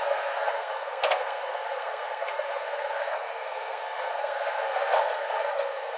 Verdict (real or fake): fake